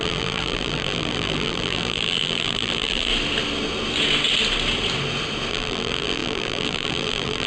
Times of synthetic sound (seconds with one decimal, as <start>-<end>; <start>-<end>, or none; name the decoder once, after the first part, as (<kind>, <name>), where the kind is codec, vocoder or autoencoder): 0.0-3.1 (vocoder, BigVGAN v2); 5.5-7.5